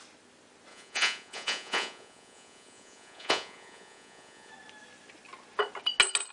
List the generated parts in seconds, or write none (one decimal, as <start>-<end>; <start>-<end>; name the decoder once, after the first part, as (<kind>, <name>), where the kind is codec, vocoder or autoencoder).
0.7-4.5 (vocoder, Vocos)

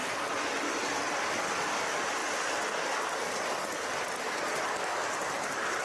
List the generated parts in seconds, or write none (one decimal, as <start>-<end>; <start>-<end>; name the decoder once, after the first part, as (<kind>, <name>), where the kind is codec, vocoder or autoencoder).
none

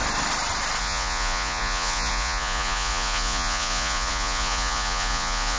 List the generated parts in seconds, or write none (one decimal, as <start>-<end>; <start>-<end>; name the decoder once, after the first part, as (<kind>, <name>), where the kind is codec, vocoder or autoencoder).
0.8-5.6 (vocoder, Vocos)

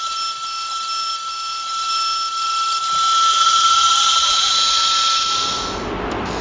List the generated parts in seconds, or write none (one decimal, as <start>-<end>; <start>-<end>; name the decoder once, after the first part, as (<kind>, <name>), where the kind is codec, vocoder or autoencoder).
3.3-4.5 (vocoder, Vocos)

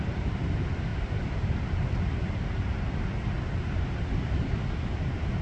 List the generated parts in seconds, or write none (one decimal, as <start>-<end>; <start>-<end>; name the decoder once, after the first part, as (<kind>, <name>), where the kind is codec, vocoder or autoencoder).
none

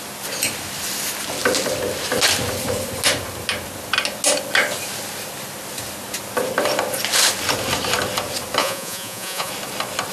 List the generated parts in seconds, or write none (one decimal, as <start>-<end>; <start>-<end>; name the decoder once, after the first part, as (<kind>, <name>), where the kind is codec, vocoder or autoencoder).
8.6-9.5 (vocoder, Vocos)

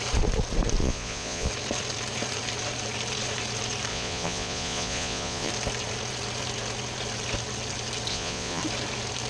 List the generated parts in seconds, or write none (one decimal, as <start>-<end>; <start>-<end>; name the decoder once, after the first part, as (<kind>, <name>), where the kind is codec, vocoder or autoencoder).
0.8-1.5 (vocoder, Vocos); 3.9-5.5; 8.1-8.6

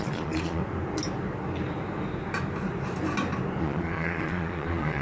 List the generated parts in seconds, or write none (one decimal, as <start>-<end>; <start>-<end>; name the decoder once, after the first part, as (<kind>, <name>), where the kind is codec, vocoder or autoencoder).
0.0-0.6 (vocoder, Vocos); 3.6-5.0